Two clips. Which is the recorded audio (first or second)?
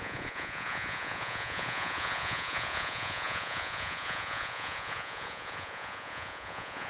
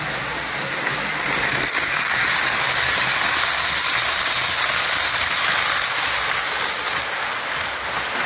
second